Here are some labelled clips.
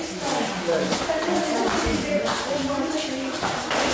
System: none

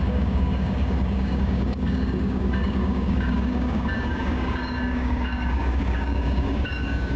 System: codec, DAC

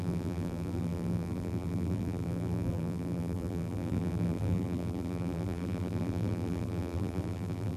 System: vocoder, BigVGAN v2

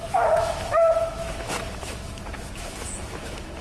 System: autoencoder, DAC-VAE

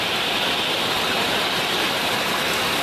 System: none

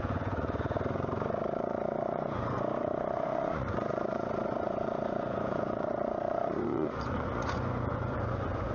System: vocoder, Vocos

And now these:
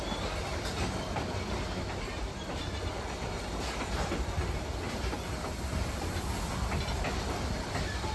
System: none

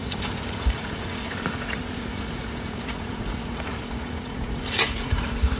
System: vocoder, Vocos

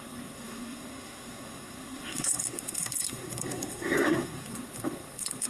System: codec, SNAC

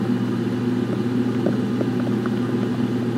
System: none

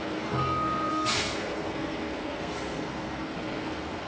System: codec, SNAC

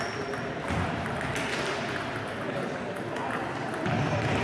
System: none